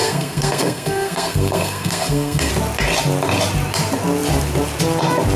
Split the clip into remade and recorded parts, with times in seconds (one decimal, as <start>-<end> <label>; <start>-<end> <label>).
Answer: 0.0-2.5 remade; 2.5-5.4 recorded